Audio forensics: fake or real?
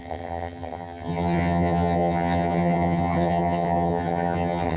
fake